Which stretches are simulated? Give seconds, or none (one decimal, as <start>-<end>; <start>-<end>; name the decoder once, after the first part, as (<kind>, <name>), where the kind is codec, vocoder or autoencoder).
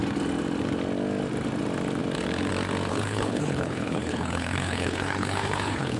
2.9-6.0 (codec, HILCodec)